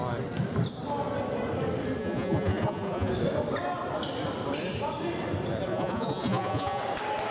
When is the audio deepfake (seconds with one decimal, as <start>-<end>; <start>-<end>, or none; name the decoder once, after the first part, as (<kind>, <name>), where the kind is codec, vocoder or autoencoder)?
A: 2.0-3.1 (vocoder, Vocos); 5.7-6.8